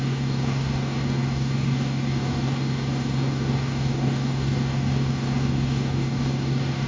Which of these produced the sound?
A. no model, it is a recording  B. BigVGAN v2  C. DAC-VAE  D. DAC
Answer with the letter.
D